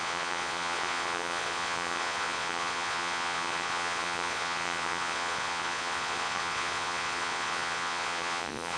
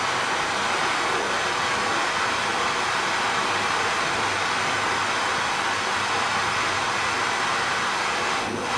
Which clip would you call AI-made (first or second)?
first